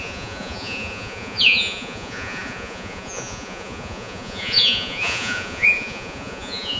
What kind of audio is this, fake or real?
fake